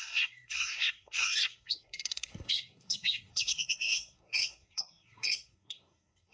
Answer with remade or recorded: remade